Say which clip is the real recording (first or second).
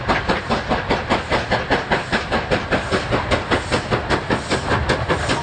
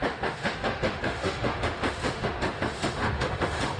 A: first